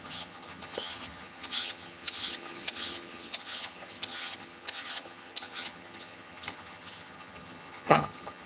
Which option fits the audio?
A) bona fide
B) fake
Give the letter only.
B